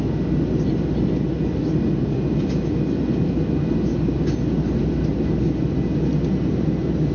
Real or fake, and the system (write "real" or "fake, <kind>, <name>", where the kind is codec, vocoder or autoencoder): real